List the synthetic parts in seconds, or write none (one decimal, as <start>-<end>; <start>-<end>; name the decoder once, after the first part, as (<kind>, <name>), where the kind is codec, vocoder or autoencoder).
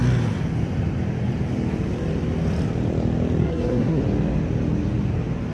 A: 3.4-4.0 (codec, SNAC)